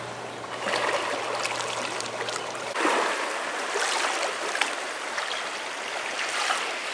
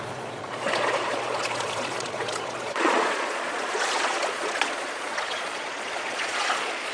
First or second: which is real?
first